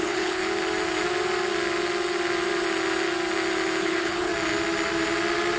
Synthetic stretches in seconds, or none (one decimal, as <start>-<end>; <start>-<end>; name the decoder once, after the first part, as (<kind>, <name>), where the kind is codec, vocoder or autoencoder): 0.0-0.4 (codec, HILCodec); 3.8-4.3